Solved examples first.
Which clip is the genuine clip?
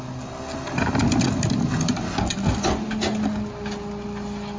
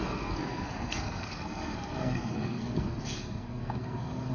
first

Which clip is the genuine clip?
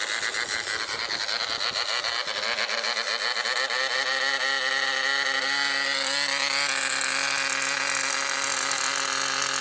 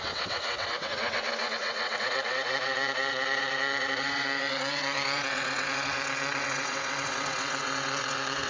first